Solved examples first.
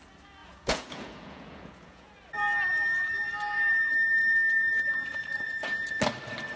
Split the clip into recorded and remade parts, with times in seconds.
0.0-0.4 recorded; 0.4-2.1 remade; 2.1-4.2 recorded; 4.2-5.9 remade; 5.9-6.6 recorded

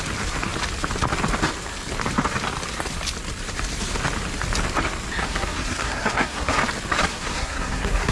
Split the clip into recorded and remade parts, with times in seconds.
0.0-5.2 recorded; 5.2-6.6 remade; 6.6-7.1 recorded; 7.1-8.1 remade

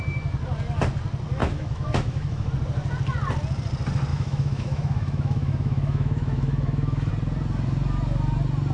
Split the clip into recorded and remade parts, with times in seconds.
0.0-1.4 recorded; 1.4-2.5 remade; 2.5-4.1 recorded; 4.1-7.1 remade; 7.1-8.7 recorded